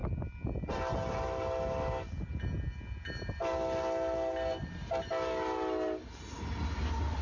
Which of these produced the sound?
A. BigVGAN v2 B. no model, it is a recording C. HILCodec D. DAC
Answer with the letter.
B